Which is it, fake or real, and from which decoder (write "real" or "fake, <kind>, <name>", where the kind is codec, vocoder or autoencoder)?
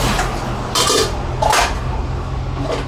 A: real